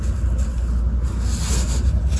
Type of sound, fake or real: real